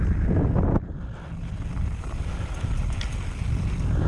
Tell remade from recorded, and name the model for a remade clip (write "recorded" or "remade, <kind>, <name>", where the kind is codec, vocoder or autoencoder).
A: recorded